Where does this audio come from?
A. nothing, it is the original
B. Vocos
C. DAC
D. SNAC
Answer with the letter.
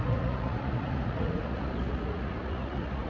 B